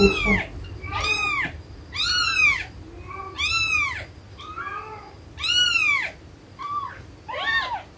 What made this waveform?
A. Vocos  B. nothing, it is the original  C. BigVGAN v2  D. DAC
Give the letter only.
B